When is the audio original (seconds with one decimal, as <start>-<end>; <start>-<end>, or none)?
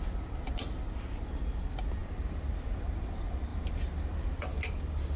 0.0-3.5; 4.8-5.2